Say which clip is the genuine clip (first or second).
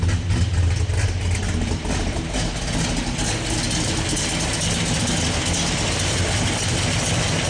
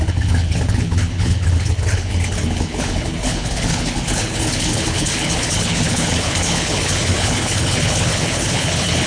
first